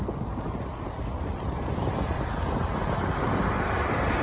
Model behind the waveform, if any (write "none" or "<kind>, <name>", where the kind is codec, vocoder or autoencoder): none